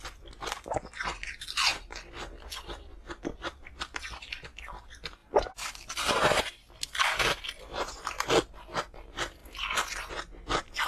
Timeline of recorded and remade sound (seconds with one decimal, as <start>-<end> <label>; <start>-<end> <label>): 0.0-10.9 recorded